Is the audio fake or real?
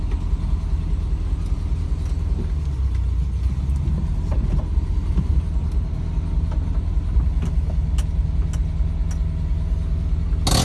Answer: real